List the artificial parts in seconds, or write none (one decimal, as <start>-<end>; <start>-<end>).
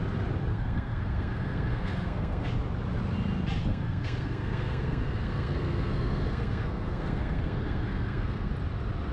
0.5-2.5; 3.6-8.5